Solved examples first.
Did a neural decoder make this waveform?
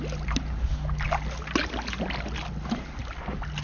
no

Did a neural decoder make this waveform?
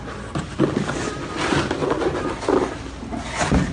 no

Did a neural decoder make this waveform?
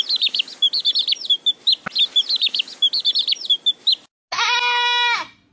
no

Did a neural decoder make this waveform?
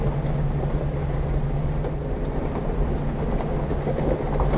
no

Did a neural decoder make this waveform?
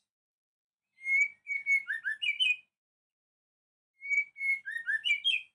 no